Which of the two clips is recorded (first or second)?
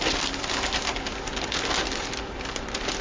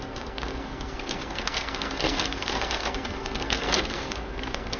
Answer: first